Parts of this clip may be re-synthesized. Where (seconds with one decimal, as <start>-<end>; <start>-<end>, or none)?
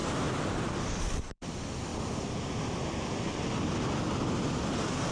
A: 1.0-1.9